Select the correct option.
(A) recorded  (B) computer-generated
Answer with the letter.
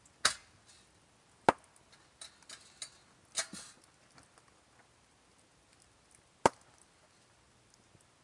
A